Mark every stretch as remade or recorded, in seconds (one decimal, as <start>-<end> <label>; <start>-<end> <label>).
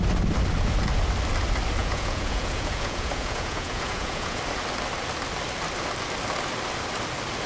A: 0.0-1.8 recorded; 1.8-4.4 remade; 4.4-7.5 recorded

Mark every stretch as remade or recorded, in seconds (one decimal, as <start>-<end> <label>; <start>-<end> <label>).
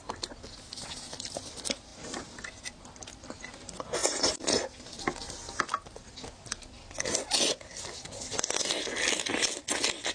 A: 0.0-10.1 recorded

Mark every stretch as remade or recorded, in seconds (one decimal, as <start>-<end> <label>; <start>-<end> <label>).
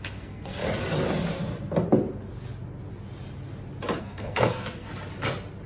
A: 0.0-0.6 remade; 0.6-4.0 recorded; 4.0-4.9 remade; 4.9-5.7 recorded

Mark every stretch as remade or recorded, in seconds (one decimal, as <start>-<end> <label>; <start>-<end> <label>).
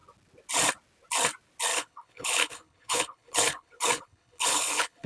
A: 0.0-1.7 recorded; 1.7-5.1 remade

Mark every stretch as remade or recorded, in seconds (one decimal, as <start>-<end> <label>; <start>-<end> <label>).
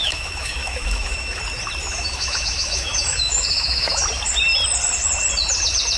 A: 0.0-1.4 remade; 1.4-1.8 recorded; 1.8-4.0 remade; 4.0-6.0 recorded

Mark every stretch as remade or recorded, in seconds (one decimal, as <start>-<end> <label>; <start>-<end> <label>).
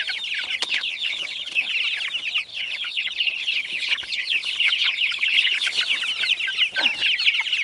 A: 0.0-0.6 recorded; 0.6-1.7 remade; 1.7-2.5 recorded; 2.5-5.8 remade; 5.8-7.6 recorded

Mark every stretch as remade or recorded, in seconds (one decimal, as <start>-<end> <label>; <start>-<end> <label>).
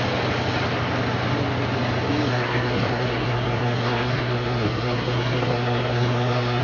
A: 0.0-2.3 recorded; 2.3-6.6 remade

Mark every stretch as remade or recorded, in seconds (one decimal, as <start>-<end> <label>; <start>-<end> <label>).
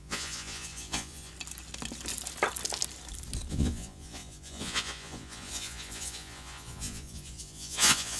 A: 0.0-1.3 remade; 1.3-3.5 recorded; 3.5-8.2 remade